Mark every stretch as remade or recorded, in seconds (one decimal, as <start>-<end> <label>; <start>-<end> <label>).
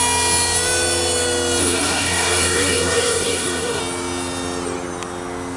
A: 0.0-1.6 recorded; 1.6-3.8 remade; 3.8-5.6 recorded